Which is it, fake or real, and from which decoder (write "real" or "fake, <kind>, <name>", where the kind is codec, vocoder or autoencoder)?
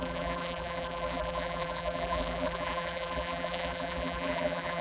fake, vocoder, BigVGAN v2